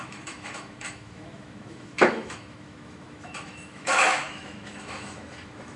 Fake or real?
fake